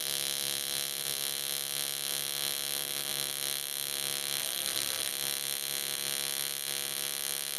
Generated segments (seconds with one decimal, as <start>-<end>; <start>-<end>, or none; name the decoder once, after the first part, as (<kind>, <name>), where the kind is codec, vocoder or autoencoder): 4.4-5.1 (codec, SNAC)